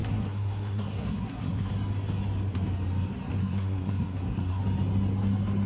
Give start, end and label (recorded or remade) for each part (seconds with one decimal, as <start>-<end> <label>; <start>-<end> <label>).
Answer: 0.0-1.7 remade; 1.7-3.4 recorded; 3.4-4.6 remade; 4.6-5.7 recorded